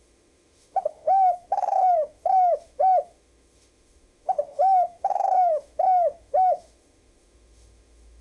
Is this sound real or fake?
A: fake